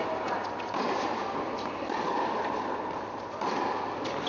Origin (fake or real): real